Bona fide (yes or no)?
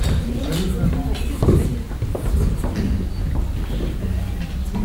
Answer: yes